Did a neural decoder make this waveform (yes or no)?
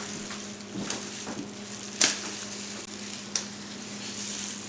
no